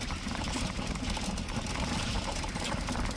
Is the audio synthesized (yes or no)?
no